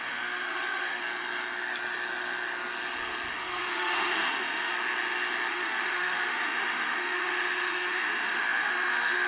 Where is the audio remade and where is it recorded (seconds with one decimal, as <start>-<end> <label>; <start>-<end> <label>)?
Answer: 0.0-1.0 remade; 1.0-3.3 recorded; 3.3-4.7 remade; 4.7-5.5 recorded; 5.5-9.3 remade